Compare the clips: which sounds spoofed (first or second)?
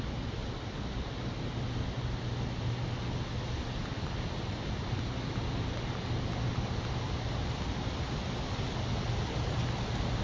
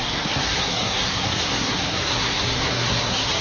second